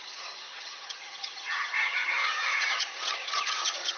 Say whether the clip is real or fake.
fake